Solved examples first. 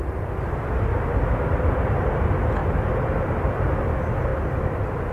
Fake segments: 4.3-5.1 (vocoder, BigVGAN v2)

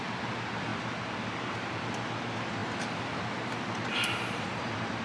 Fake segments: 0.7-2.1 (vocoder, BigVGAN v2); 2.6-3.2

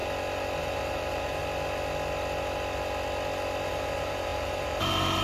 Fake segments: 0.6-1.4 (vocoder, BigVGAN v2); 3.7-5.2

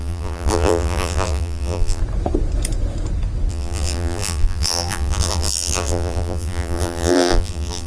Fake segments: 0.0-2.0 (vocoder, BigVGAN v2); 3.5-7.9

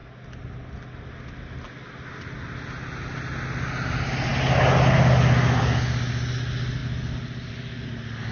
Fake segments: none

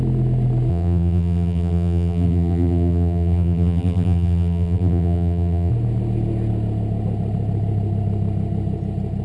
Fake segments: 0.7-5.7 (vocoder, BigVGAN v2)

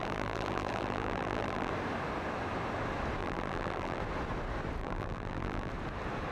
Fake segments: 0.0-1.7 (vocoder, BigVGAN v2); 3.2-4.0; 4.8-5.7